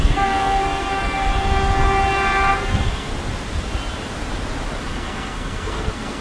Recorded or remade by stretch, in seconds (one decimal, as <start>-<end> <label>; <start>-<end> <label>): 0.0-1.3 remade; 1.3-2.5 recorded; 2.5-3.1 remade; 3.1-4.8 recorded; 4.8-6.2 remade